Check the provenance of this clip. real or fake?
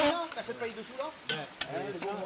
real